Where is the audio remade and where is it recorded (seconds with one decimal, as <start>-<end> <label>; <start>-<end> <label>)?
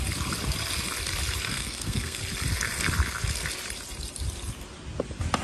0.0-1.5 recorded; 1.5-2.2 remade; 2.2-5.4 recorded